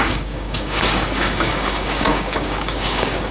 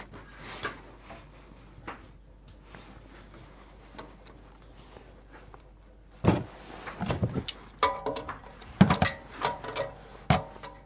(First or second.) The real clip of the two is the second